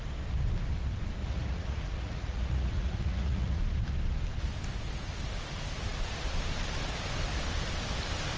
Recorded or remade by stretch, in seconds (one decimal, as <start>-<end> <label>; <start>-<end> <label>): 0.0-1.2 recorded; 1.2-3.6 remade; 3.6-8.4 recorded